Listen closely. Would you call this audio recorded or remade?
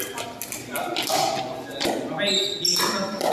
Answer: recorded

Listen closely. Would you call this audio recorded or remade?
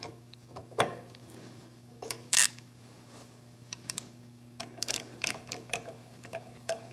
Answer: remade